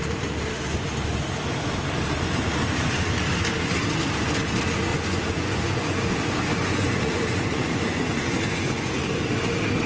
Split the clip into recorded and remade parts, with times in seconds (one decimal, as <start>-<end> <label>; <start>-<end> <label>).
0.0-4.9 recorded; 4.9-8.9 remade; 8.9-9.9 recorded